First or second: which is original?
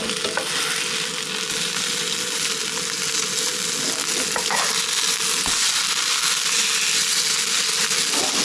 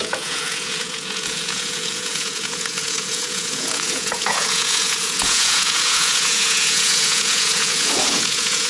first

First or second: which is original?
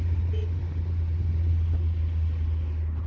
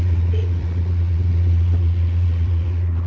first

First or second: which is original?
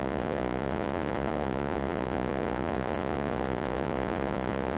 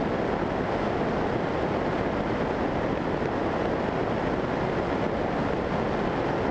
second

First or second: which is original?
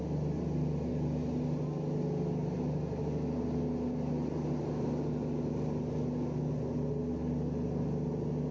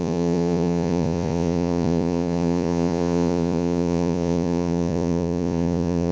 first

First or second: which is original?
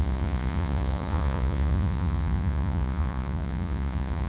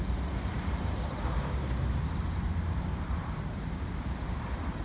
second